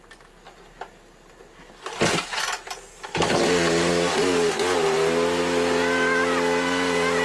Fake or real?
real